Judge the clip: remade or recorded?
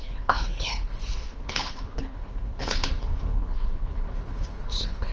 remade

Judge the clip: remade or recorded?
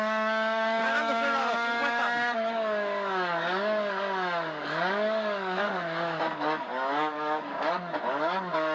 remade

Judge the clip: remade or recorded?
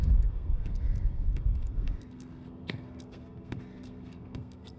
remade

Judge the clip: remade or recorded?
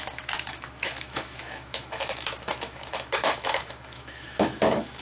remade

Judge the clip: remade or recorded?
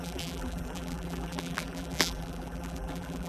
remade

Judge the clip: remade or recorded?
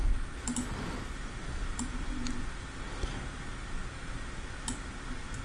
recorded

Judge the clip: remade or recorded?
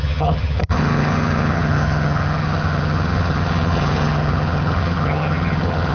remade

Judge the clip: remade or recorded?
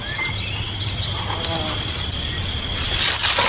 recorded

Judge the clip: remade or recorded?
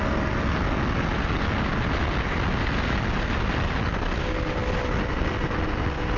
recorded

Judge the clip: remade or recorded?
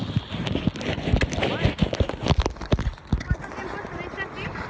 recorded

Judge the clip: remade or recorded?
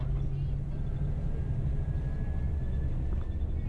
recorded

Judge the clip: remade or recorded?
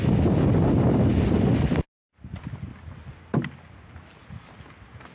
recorded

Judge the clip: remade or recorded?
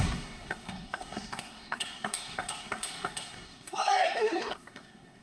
remade